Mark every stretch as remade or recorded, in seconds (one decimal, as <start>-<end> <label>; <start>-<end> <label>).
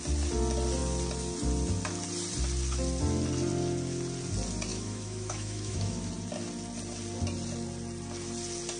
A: 0.0-4.7 recorded; 4.7-6.1 remade; 6.1-8.8 recorded